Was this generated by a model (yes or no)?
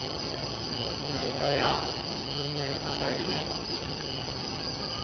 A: yes